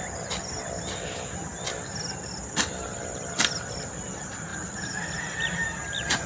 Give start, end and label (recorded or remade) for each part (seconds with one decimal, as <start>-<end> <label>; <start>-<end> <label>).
0.0-6.3 recorded